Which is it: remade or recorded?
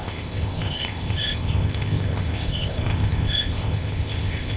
remade